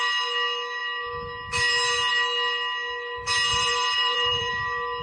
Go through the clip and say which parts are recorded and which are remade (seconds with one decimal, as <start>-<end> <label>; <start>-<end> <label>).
0.0-3.5 recorded; 3.5-4.5 remade; 4.5-5.0 recorded